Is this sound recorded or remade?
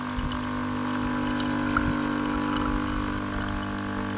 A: recorded